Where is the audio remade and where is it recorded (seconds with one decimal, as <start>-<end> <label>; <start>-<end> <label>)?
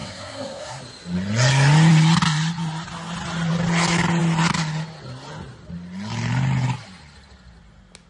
0.0-0.8 remade; 0.8-8.1 recorded